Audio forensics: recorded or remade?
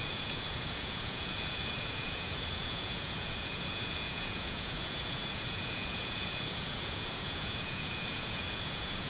remade